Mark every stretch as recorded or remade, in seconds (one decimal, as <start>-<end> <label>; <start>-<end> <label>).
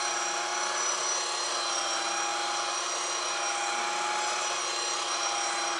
0.0-5.8 recorded